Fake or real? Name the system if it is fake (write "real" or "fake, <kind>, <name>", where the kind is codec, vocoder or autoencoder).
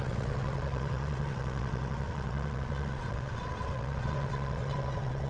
fake, vocoder, WaveNeXt